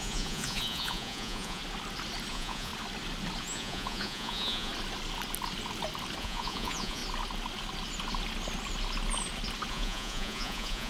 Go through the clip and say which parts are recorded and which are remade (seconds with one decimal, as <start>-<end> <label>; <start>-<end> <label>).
0.0-1.6 remade; 1.6-2.3 recorded; 2.3-2.7 remade; 2.7-3.4 recorded; 3.4-4.7 remade; 4.7-6.2 recorded; 6.2-7.0 remade; 7.0-9.7 recorded; 9.7-10.9 remade